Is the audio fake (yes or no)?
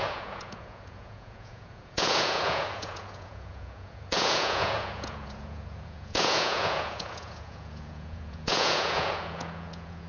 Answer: yes